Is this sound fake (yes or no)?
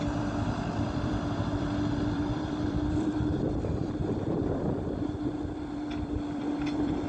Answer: yes